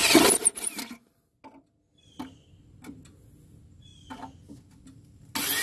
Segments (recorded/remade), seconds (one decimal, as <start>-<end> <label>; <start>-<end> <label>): 0.0-5.6 recorded